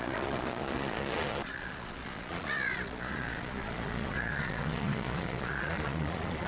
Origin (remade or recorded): remade